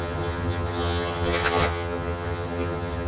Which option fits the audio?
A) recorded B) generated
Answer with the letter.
B